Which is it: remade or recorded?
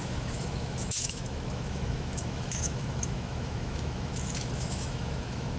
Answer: remade